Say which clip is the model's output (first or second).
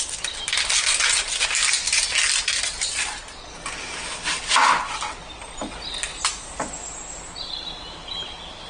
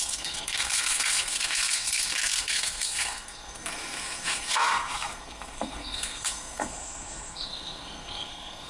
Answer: second